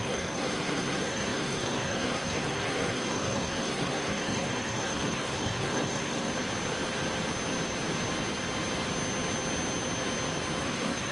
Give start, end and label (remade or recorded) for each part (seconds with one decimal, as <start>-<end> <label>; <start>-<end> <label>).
0.0-6.3 remade; 6.3-10.6 recorded; 10.6-11.1 remade